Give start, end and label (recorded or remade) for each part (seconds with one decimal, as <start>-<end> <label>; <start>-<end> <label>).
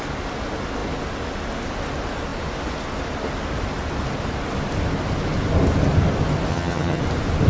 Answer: 0.0-6.5 recorded; 6.5-7.0 remade; 7.0-7.5 recorded